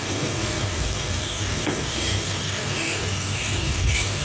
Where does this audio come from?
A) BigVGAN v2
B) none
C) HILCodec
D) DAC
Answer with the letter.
D